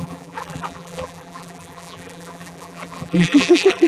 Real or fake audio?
fake